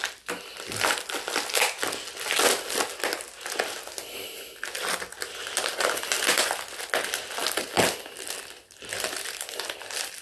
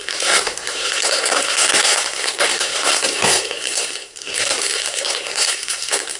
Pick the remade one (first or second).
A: second